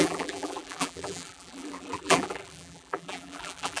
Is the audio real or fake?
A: fake